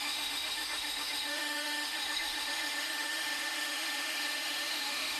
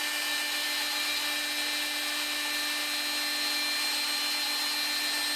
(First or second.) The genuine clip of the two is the second